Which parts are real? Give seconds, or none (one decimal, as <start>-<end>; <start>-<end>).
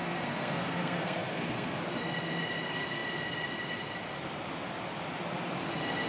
1.8-6.1